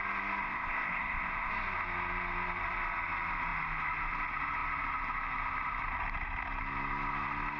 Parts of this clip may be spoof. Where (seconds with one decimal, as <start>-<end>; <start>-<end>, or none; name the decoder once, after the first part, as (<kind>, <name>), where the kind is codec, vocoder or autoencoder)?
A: 0.4-1.5 (codec, ZipCodec)